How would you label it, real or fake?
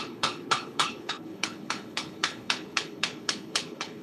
fake